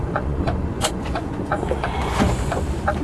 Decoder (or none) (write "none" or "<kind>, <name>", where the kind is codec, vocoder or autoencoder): vocoder, Vocos